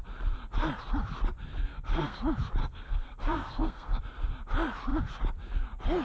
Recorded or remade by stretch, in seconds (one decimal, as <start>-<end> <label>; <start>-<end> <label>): 0.0-1.7 recorded; 1.7-2.2 remade; 2.2-2.6 recorded; 2.6-4.0 remade; 4.0-6.0 recorded